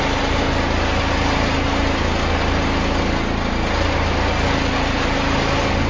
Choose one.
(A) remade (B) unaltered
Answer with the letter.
B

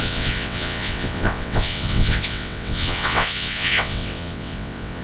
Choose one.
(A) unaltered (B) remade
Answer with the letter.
B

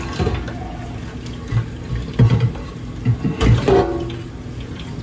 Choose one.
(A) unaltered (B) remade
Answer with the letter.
A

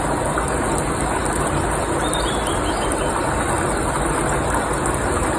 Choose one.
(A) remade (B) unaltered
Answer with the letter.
B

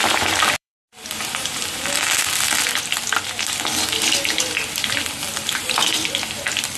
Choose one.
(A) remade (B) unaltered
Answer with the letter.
A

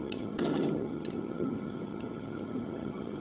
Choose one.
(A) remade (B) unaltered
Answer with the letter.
A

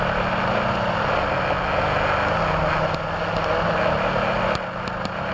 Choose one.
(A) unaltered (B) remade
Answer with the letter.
A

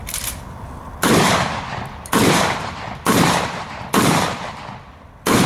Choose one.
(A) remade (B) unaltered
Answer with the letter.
A